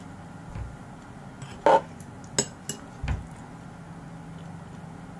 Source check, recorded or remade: recorded